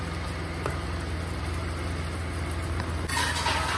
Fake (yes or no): no